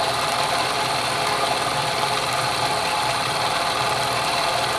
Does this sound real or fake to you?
real